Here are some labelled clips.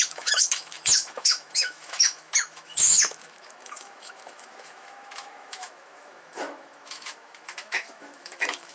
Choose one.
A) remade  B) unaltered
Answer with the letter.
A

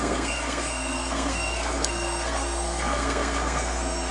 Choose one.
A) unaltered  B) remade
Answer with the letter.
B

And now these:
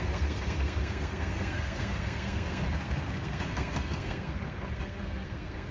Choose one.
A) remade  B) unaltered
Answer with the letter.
A